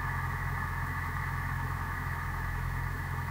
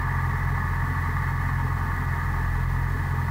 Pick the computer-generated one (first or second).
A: first